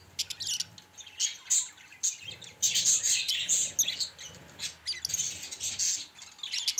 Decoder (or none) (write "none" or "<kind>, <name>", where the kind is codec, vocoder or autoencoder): none